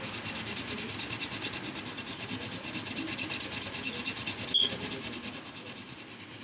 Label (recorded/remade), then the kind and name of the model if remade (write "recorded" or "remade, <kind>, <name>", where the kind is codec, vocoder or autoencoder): recorded